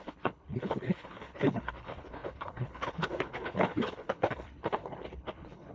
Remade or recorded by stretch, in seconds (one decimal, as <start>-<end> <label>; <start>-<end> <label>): 0.0-5.7 remade